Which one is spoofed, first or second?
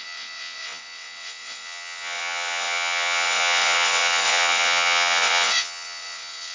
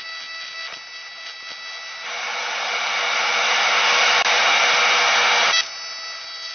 first